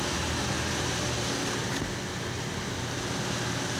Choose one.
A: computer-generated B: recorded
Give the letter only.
B